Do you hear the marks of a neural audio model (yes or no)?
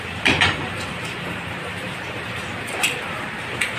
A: yes